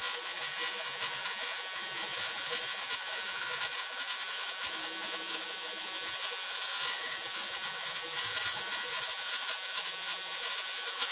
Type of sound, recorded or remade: remade